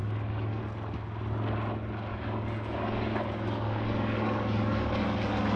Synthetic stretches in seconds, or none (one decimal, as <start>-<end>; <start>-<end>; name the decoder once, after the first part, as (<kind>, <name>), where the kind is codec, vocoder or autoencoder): 0.0-0.6 (codec, DAC); 2.1-5.6